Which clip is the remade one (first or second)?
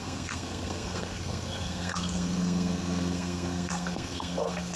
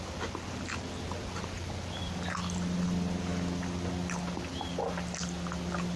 first